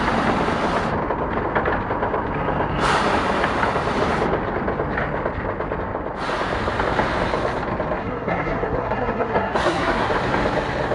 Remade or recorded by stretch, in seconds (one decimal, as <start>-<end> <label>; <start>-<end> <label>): 0.0-8.0 recorded; 8.0-10.1 remade; 10.1-10.9 recorded